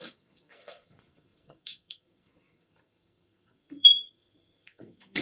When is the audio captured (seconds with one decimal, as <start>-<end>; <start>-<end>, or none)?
none